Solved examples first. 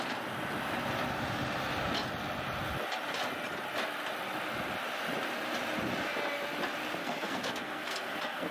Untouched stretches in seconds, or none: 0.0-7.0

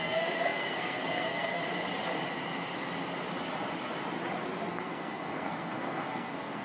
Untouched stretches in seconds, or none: 1.6-4.7

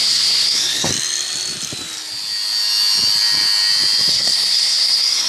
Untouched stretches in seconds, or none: 0.9-4.1

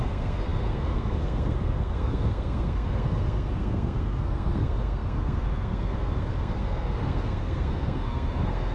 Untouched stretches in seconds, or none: none